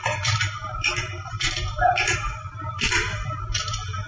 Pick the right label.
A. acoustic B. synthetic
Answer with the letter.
B